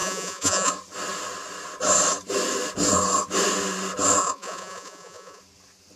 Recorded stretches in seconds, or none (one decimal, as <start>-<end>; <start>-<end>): 0.7-4.2; 5.4-6.0